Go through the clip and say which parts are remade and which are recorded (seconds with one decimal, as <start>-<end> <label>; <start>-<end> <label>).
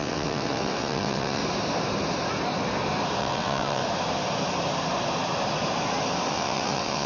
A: 0.0-1.4 remade; 1.4-3.2 recorded; 3.2-3.8 remade; 3.8-6.3 recorded; 6.3-7.1 remade